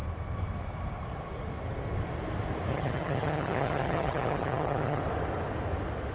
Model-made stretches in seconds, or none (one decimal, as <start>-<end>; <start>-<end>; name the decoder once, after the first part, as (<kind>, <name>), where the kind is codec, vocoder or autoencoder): 2.7-5.0 (vocoder, HiFi-GAN)